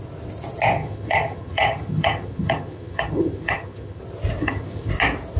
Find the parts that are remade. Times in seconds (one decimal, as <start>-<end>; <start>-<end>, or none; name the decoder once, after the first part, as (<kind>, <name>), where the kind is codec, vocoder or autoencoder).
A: 0.8-4.0 (vocoder, HiFi-GAN); 4.4-4.9